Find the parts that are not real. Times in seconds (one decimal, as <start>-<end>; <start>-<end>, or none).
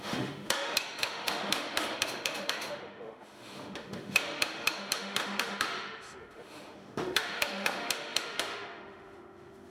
0.0-9.7